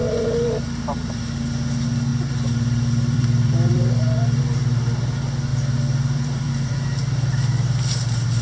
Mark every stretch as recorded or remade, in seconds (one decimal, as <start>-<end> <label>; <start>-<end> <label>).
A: 0.0-2.1 recorded; 2.1-4.4 remade; 4.4-5.5 recorded; 5.5-6.7 remade; 6.7-8.4 recorded